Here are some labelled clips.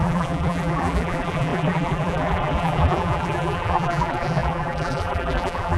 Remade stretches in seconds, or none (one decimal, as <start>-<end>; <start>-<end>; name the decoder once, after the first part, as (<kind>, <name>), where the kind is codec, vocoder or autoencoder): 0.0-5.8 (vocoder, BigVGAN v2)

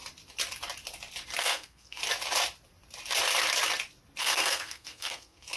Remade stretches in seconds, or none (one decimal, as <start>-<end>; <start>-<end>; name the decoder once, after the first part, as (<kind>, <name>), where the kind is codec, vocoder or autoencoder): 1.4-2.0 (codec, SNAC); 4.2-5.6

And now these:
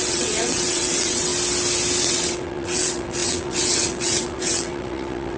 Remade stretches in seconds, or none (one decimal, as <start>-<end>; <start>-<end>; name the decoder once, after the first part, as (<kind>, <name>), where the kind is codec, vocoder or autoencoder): 0.0-1.3 (vocoder, WaveNeXt); 2.0-5.4

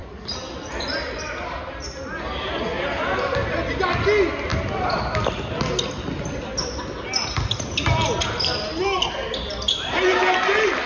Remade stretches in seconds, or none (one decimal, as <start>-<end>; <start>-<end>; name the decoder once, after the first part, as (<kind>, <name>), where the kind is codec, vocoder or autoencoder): none

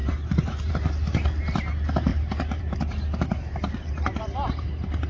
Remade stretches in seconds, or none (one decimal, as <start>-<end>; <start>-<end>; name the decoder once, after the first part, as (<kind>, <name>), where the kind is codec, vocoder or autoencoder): 2.1-2.6 (vocoder, BigVGAN v2)